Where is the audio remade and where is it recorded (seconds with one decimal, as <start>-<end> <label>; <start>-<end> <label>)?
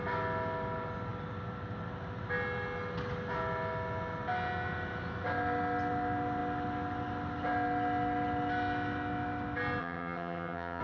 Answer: 0.0-9.8 recorded; 9.8-10.8 remade